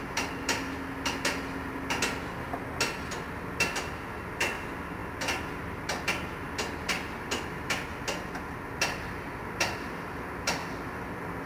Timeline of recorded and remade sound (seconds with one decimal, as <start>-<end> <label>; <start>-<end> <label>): 0.0-11.5 recorded